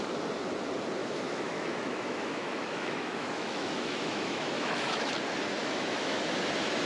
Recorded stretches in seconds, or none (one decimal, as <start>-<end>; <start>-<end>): 0.0-1.0; 5.1-5.6; 6.2-6.9